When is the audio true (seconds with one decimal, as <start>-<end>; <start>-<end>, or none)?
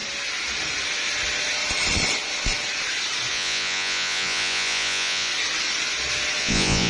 0.0-3.3; 5.3-6.4